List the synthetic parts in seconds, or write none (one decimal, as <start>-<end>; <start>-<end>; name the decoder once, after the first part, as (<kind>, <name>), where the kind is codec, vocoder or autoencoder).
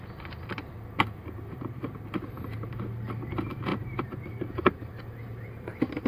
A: 3.7-4.8 (vocoder, BigVGAN v2)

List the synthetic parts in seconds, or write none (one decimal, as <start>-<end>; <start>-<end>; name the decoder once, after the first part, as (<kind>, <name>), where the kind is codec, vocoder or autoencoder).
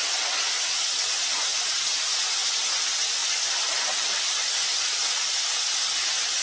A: 3.2-4.5 (vocoder, BigVGAN v2)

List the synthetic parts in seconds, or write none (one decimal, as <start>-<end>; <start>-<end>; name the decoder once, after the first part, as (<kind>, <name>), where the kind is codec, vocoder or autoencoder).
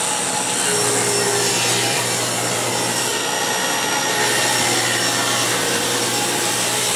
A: 1.7-2.7 (vocoder, BigVGAN v2); 5.5-7.0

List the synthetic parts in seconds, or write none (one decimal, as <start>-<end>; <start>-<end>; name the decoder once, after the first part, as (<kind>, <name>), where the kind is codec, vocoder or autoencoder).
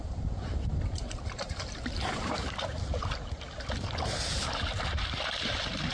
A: 0.0-3.0 (vocoder, BigVGAN v2)